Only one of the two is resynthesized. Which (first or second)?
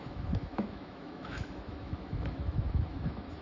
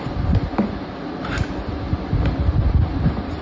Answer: first